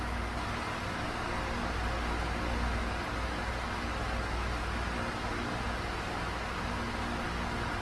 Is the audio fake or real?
real